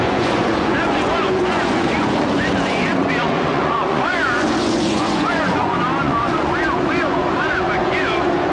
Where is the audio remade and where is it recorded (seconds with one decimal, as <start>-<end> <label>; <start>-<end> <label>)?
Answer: 0.0-8.5 remade